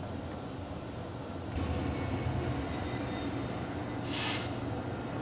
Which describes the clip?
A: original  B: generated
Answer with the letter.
A